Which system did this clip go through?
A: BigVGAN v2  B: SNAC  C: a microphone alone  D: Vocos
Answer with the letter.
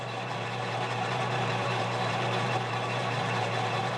A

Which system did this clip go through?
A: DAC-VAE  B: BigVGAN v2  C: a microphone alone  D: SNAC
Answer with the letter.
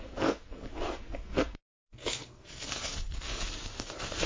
D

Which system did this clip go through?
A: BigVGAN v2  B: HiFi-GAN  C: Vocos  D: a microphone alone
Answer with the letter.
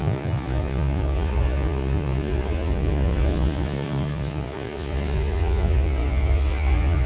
C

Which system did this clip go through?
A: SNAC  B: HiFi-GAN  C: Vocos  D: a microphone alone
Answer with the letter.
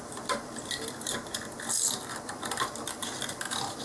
D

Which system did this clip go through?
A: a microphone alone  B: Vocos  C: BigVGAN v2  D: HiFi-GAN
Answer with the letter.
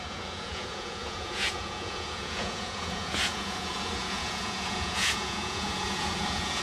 B